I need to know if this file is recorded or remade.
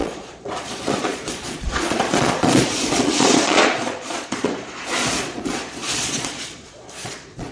remade